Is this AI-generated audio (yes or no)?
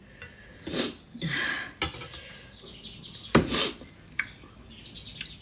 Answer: no